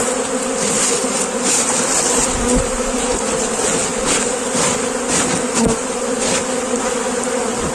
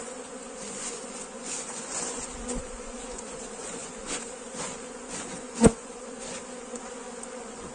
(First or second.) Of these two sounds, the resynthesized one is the second